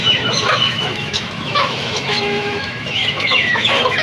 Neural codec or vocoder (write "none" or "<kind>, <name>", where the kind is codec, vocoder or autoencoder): autoencoder, DAC-VAE